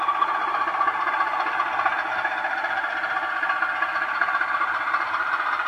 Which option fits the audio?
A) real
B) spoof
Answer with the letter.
A